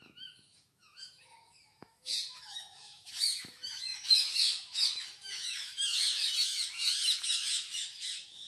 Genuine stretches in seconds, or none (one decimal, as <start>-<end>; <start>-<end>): none